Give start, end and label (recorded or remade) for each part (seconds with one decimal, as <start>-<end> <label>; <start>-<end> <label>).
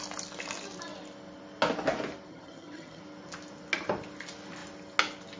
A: 0.0-2.3 recorded; 2.3-3.0 remade; 3.0-5.4 recorded